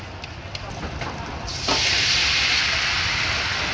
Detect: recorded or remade recorded